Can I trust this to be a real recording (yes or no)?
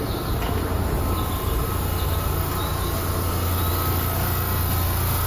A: yes